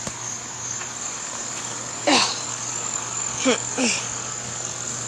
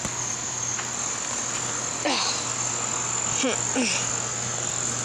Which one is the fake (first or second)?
first